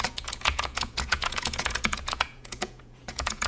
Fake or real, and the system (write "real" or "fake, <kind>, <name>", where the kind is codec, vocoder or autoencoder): fake, vocoder, Vocos